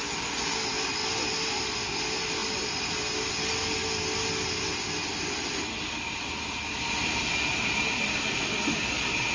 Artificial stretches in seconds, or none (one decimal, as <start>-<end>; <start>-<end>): none